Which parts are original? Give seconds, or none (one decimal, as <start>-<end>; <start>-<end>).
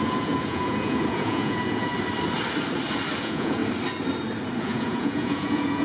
1.9-3.2; 3.6-4.6